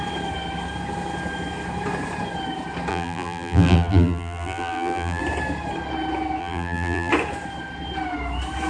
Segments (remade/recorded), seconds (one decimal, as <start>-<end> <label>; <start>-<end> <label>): 0.0-2.9 recorded; 2.9-5.2 remade; 5.2-6.4 recorded; 6.4-7.1 remade; 7.1-8.7 recorded